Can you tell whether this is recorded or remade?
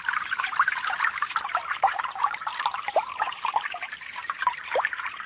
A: remade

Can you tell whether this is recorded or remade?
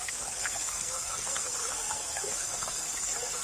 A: remade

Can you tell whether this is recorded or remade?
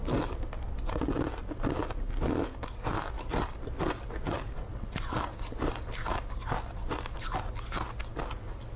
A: recorded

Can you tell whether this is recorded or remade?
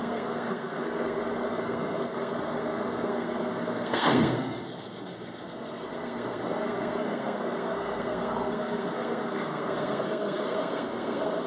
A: remade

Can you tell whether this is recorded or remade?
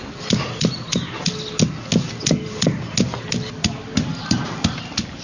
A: recorded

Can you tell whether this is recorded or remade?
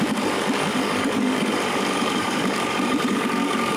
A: remade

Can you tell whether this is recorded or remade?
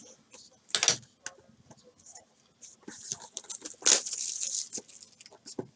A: recorded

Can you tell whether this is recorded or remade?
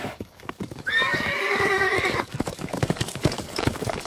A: remade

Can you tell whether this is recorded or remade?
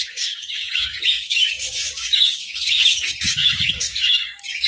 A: remade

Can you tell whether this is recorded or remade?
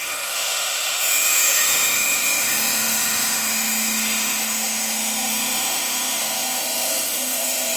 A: remade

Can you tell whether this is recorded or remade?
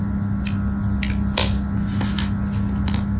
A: recorded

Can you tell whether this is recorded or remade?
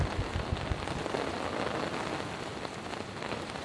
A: recorded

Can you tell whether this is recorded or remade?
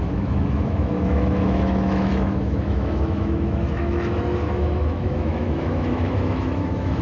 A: remade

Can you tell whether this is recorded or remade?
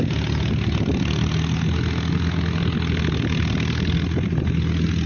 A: recorded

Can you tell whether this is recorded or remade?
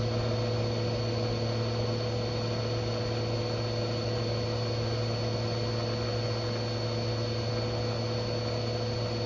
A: recorded